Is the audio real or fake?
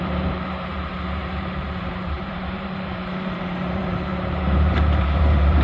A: fake